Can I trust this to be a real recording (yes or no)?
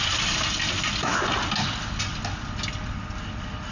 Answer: yes